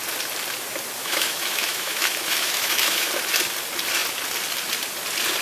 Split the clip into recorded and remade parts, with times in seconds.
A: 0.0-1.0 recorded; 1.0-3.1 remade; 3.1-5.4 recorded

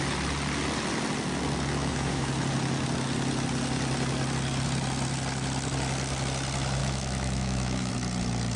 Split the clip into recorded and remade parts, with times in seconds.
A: 0.0-1.8 recorded; 1.8-2.3 remade; 2.3-6.8 recorded; 6.8-7.9 remade; 7.9-8.6 recorded

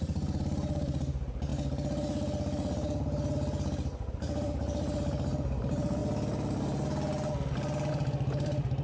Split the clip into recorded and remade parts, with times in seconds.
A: 0.0-1.5 remade; 1.5-4.1 recorded; 4.1-6.0 remade; 6.0-7.9 recorded; 7.9-8.8 remade

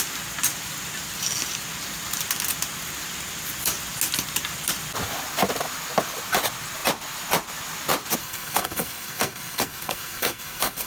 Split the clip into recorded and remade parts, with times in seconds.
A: 0.0-8.2 recorded; 8.2-10.9 remade